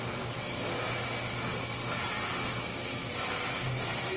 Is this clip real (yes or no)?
yes